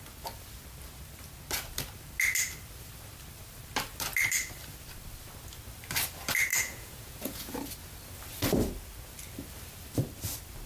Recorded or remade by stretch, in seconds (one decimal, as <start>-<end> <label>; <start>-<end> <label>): 0.0-6.5 recorded; 6.5-7.5 remade; 7.5-10.7 recorded